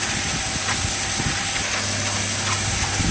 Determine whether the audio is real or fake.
real